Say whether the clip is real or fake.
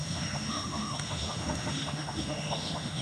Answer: fake